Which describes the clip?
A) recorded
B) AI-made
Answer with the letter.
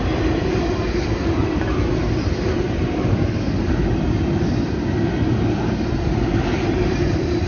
B